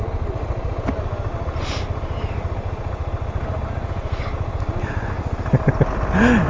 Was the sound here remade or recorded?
recorded